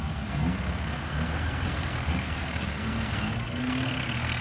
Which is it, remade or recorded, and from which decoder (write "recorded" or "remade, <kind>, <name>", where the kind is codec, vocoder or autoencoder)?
remade, codec, SNAC